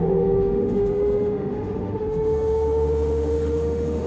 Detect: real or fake fake